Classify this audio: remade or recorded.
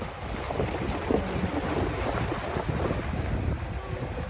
recorded